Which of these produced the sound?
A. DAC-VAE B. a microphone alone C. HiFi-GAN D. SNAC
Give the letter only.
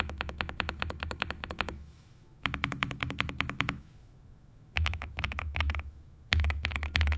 A